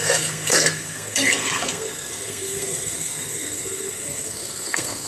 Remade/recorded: remade